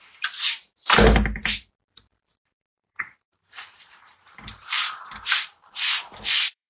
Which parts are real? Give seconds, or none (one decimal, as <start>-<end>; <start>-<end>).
0.0-2.7